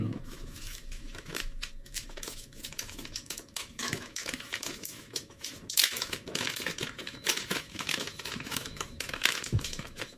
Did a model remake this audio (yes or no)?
yes